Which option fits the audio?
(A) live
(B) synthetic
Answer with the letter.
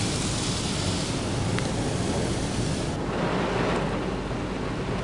A